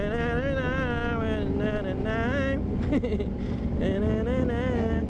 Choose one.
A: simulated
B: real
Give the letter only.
B